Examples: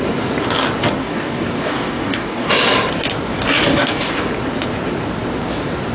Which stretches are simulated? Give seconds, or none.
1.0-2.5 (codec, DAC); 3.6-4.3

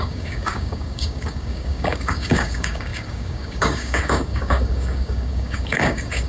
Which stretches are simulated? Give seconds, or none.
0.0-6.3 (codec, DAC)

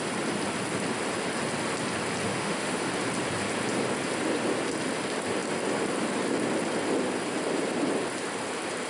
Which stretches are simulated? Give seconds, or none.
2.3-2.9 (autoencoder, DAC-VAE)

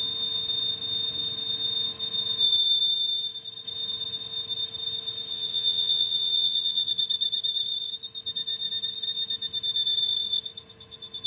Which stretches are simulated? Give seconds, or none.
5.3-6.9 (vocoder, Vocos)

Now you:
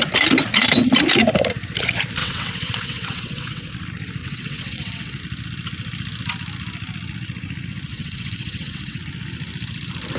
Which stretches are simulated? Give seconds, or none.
2.2-3.7 (vocoder, WaveNeXt); 4.2-5.2; 7.9-9.0

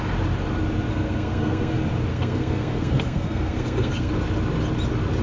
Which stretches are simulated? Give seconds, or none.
0.9-1.7 (codec, SNAC); 2.1-4.1

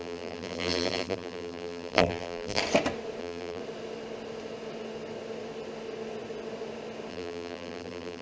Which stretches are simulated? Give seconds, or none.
0.0-2.6 (vocoder, BigVGAN v2); 3.2-3.6; 7.1-8.2

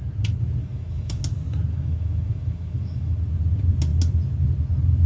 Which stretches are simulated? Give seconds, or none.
0.6-1.2 (autoencoder, DAC-VAE); 1.7-3.1